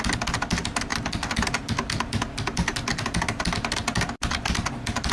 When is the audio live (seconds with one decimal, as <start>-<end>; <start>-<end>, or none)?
0.0-5.1